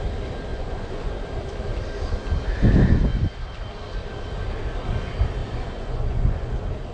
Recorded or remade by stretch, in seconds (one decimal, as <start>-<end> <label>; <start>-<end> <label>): 0.0-0.5 recorded; 0.5-1.1 remade; 1.1-5.4 recorded; 5.4-6.5 remade; 6.5-6.9 recorded